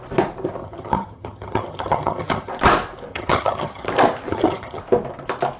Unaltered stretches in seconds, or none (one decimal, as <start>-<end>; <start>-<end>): 0.0-0.6; 2.5-3.1; 3.9-4.3; 4.8-5.6

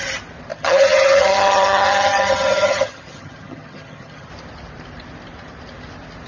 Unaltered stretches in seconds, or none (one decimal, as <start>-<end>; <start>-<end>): 0.0-0.5; 4.3-6.3

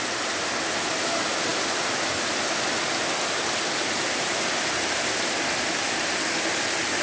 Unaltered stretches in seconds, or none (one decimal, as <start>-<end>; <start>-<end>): 0.0-7.0

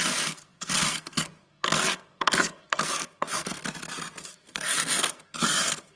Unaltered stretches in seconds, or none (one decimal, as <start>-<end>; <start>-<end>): 3.6-4.2